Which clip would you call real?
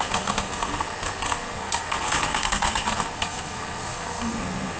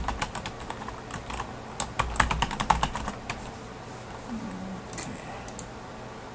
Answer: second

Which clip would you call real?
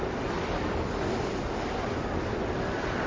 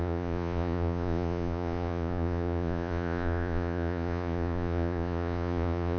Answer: first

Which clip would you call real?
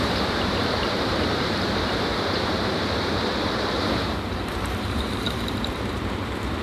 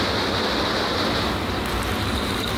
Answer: second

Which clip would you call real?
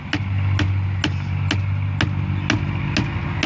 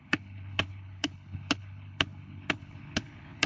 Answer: first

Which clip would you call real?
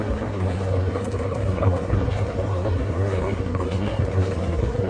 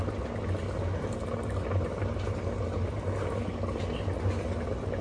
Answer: second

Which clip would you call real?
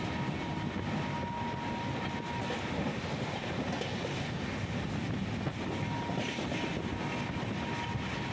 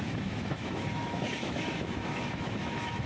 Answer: first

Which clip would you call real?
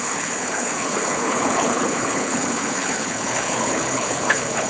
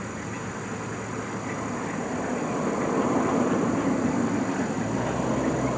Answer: second